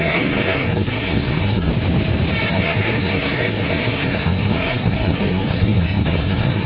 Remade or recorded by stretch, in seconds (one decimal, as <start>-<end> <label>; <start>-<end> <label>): 0.0-1.7 remade; 1.7-2.5 recorded; 2.5-6.7 remade